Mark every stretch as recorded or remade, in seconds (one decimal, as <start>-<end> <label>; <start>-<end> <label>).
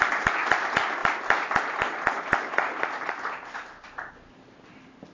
0.0-5.1 recorded